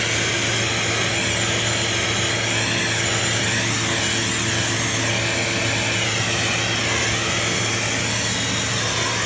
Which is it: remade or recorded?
recorded